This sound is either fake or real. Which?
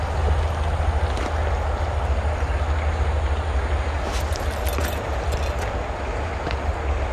real